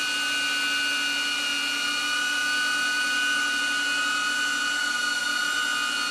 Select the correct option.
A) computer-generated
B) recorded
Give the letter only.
B